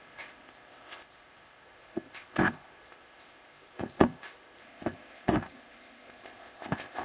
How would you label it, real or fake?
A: fake